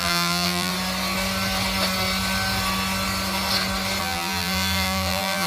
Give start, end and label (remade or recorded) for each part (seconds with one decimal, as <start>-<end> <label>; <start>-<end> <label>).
0.0-0.7 remade; 0.7-4.0 recorded; 4.0-5.5 remade